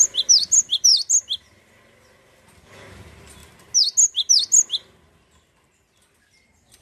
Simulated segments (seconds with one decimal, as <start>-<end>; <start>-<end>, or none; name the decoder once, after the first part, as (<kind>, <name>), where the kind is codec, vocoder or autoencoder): none